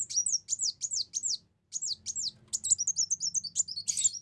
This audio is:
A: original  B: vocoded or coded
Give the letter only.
A